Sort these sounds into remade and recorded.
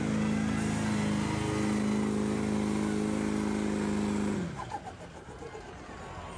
recorded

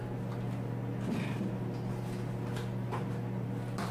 recorded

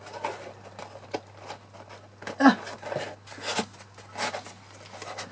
recorded